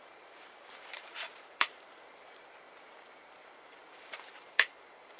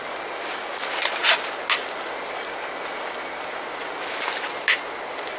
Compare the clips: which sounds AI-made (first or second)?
first